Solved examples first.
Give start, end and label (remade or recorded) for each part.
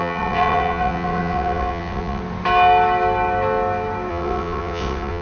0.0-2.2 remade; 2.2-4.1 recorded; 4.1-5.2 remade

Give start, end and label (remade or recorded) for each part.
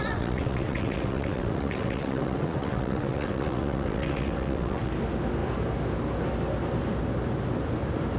0.0-4.9 remade; 4.9-8.2 recorded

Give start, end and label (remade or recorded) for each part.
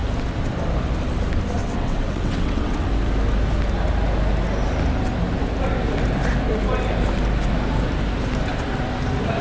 0.0-1.6 recorded; 1.6-2.9 remade; 2.9-9.4 recorded